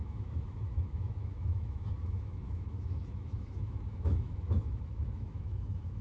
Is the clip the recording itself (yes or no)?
no